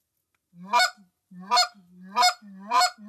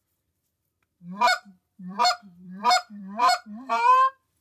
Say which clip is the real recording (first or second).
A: first